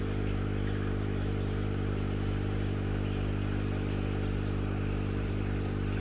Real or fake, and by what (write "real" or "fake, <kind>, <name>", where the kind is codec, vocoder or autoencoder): fake, vocoder, BigVGAN v2